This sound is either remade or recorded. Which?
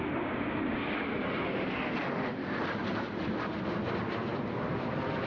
recorded